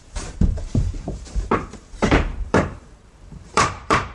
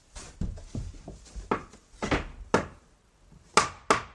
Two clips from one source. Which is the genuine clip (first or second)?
second